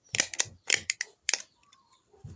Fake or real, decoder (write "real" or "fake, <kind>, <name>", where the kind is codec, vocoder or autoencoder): fake, vocoder, BigVGAN v2